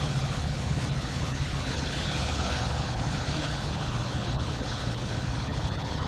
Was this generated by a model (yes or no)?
yes